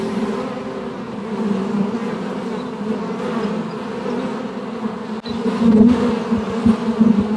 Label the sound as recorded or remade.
recorded